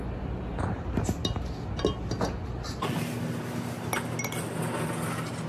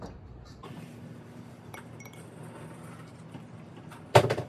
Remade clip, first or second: second